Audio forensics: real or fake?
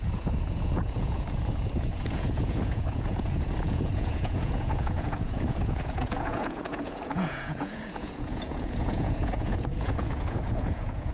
fake